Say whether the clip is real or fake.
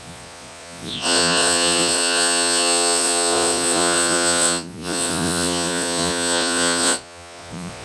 fake